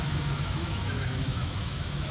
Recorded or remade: remade